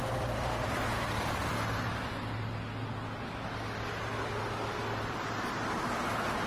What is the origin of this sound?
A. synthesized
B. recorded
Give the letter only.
B